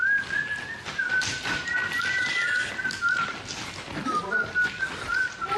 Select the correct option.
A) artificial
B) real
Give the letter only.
B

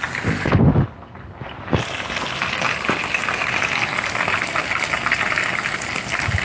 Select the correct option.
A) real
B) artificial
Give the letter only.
A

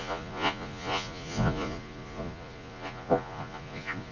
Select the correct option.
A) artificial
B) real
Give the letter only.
A